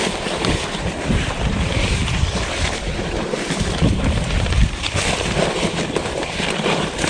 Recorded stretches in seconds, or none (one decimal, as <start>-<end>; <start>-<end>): none